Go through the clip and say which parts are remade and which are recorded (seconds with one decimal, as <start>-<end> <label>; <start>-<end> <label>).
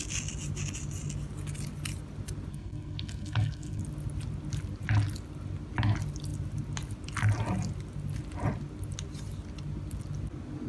0.0-2.5 recorded; 2.5-3.8 remade; 3.8-10.7 recorded